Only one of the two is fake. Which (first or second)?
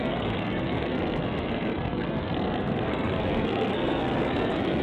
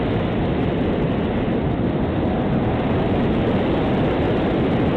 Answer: first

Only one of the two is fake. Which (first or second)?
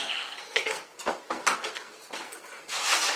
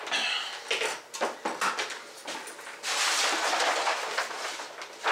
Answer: first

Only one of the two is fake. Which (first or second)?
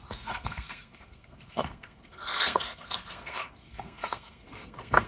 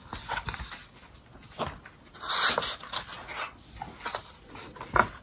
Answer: first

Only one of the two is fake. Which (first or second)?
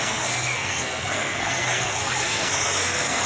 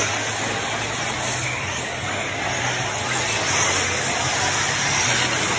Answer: first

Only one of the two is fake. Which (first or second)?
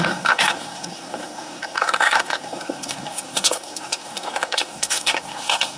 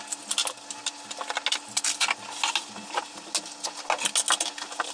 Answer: first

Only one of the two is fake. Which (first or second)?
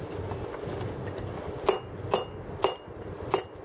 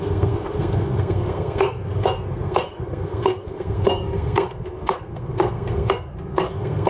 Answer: second